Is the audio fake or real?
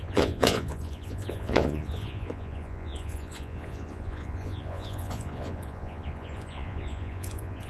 fake